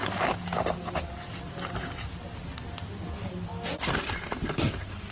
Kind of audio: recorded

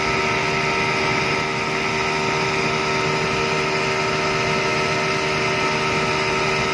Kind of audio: recorded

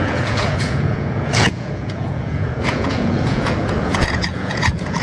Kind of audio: remade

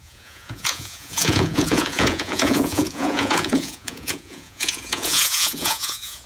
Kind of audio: remade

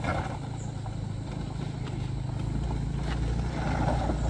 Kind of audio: recorded